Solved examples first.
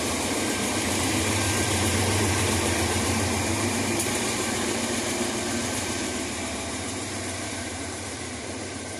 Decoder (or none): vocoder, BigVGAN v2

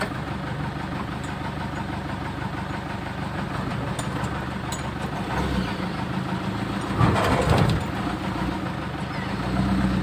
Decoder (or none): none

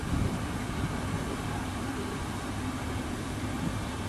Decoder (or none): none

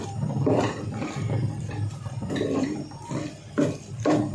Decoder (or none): vocoder, BigVGAN v2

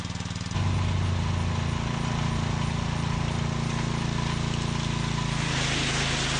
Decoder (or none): none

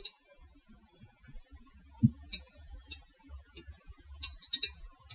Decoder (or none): vocoder, BigVGAN v2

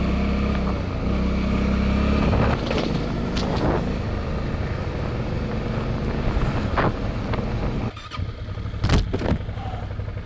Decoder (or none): none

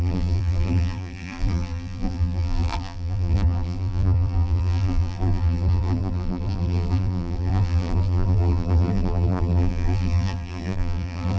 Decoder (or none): vocoder, BigVGAN v2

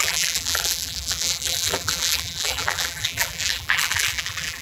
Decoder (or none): vocoder, BigVGAN v2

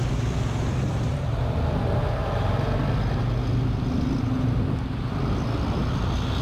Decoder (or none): none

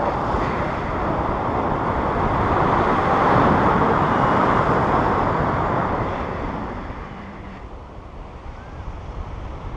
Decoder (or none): vocoder, BigVGAN v2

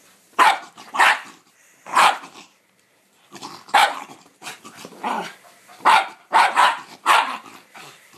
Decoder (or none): vocoder, BigVGAN v2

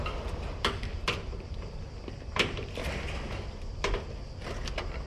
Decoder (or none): none